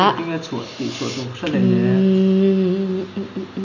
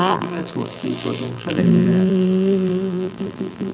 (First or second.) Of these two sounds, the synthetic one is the second